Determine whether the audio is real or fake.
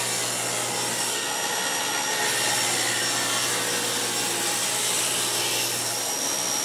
real